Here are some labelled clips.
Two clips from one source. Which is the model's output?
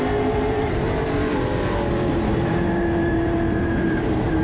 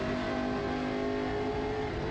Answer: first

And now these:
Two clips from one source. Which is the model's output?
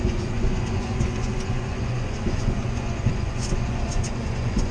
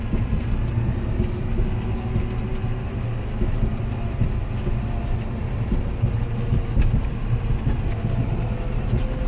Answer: first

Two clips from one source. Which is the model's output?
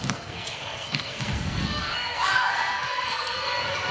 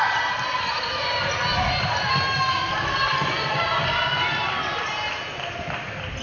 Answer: first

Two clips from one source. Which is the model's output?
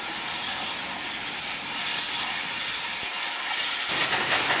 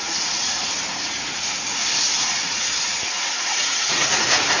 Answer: second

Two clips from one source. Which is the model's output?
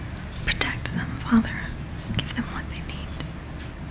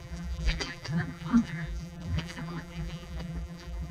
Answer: second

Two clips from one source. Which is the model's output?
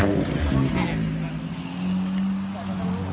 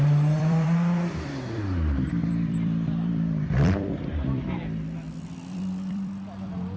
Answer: second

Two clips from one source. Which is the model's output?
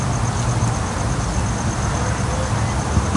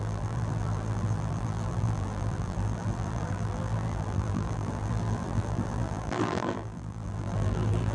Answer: second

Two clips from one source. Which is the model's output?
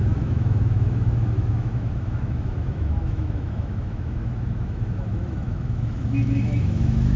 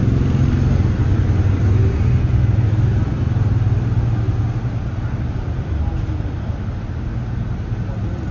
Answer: first